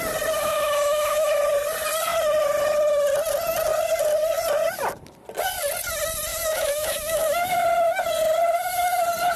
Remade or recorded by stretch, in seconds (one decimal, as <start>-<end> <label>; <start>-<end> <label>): 0.0-0.4 recorded; 0.4-1.4 remade; 1.4-6.3 recorded; 6.3-7.5 remade; 7.5-9.4 recorded